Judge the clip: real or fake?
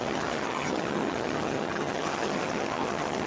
fake